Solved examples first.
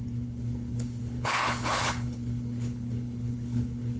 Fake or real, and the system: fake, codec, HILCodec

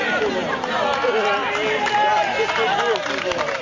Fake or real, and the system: real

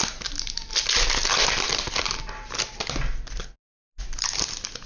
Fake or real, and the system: real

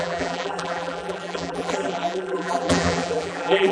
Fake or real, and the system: fake, vocoder, BigVGAN v2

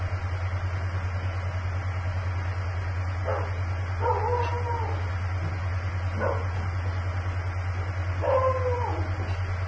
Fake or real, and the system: real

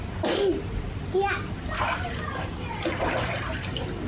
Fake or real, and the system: real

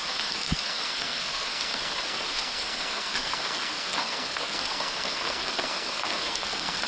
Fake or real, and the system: fake, codec, SNAC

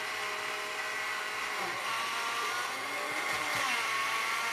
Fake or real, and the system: real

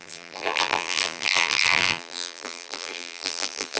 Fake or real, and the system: fake, vocoder, BigVGAN v2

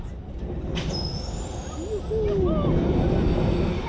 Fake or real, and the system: real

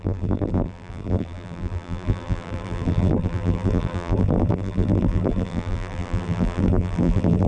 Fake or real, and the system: fake, vocoder, BigVGAN v2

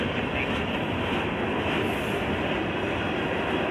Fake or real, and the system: real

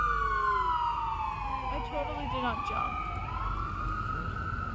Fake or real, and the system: real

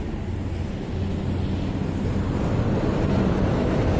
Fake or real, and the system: real